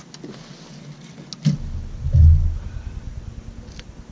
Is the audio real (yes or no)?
yes